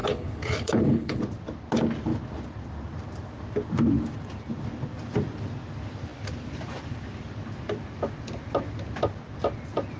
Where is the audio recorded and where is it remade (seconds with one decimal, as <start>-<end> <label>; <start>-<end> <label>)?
0.0-1.2 remade; 1.2-10.0 recorded